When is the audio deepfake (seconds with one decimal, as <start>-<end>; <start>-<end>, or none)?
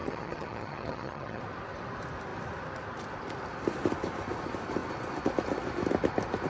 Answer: 0.0-1.4